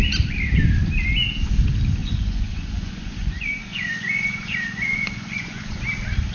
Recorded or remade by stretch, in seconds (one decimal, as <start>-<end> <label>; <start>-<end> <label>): 0.0-2.0 recorded; 2.0-5.8 remade; 5.8-6.3 recorded